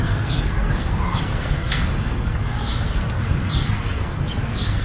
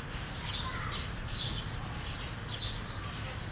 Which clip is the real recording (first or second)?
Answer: second